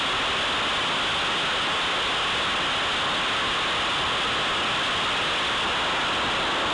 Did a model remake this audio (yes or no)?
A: no